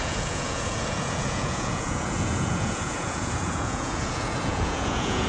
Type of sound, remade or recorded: remade